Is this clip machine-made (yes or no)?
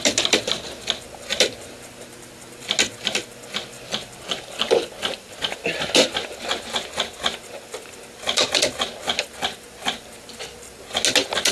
no